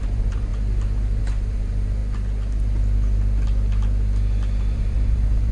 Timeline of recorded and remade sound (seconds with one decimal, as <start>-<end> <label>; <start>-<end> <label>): 0.0-0.5 remade; 0.5-1.2 recorded; 1.2-2.0 remade; 2.0-4.7 recorded; 4.7-5.5 remade